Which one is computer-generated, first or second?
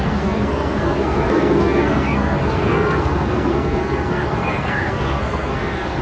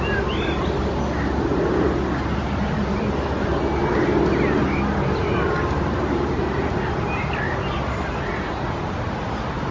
first